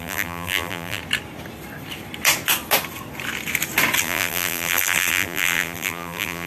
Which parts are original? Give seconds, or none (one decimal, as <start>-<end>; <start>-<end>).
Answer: 1.0-4.0